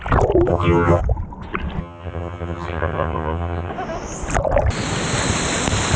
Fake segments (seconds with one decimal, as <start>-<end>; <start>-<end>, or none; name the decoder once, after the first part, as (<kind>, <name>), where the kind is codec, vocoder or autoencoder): 0.5-1.0 (vocoder, HiFi-GAN); 1.8-3.7